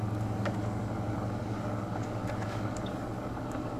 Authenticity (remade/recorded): remade